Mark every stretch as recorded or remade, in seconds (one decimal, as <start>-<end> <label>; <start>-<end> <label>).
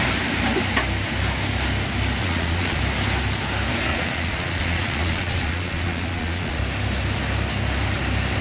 0.0-2.2 recorded; 2.2-2.8 remade; 2.8-3.9 recorded; 3.9-6.6 remade; 6.6-8.4 recorded